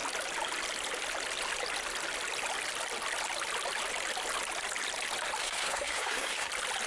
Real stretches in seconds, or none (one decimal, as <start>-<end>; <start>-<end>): 0.0-5.4; 6.5-6.9